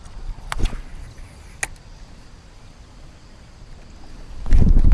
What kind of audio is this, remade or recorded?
recorded